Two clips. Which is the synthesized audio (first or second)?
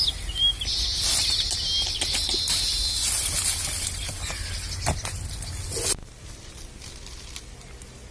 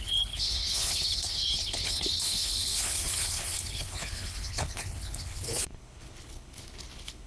second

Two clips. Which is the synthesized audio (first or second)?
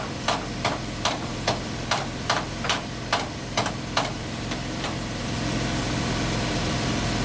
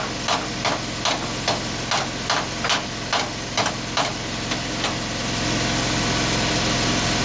first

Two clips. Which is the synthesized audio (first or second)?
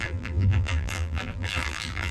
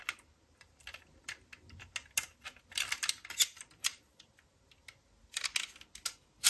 first